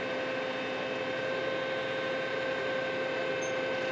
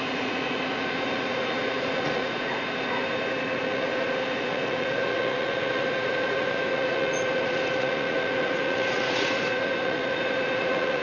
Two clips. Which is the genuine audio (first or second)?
first